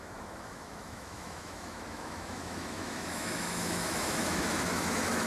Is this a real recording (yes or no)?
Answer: no